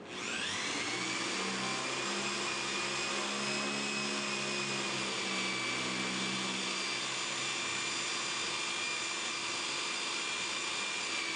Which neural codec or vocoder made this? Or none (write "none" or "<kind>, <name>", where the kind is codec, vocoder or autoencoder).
none